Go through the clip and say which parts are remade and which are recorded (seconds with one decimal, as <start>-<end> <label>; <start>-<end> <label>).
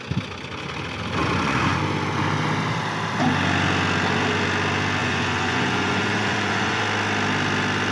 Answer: 0.0-1.2 recorded; 1.2-1.8 remade; 1.8-5.0 recorded; 5.0-6.8 remade; 6.8-7.9 recorded